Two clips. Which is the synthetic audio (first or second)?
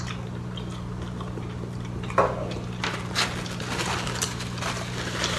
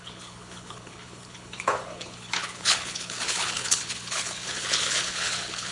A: second